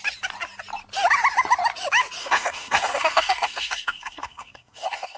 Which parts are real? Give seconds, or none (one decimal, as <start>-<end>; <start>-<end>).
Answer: 0.0-2.2